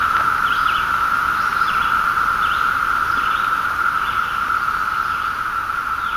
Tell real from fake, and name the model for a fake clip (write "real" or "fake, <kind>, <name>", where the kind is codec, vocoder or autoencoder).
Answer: real